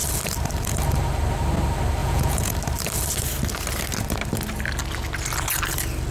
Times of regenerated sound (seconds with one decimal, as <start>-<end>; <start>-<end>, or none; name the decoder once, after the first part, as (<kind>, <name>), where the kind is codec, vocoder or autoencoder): 2.0-2.5 (vocoder, Vocos)